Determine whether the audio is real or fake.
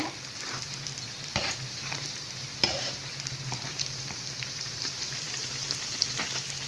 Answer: fake